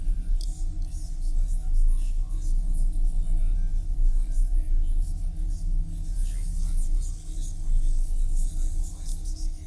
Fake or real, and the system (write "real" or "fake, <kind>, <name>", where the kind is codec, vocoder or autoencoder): real